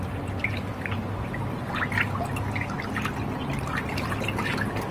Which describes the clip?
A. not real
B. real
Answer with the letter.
B